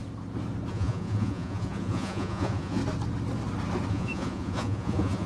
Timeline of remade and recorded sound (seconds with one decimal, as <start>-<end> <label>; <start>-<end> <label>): 0.0-0.7 recorded; 0.7-2.8 remade; 2.8-3.9 recorded; 3.9-5.3 remade